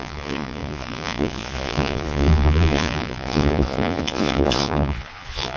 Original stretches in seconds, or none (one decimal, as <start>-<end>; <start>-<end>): none